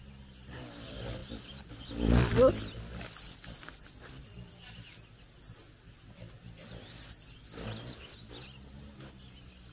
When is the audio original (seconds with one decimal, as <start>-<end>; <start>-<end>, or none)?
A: 0.0-9.7